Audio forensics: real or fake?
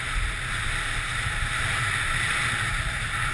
real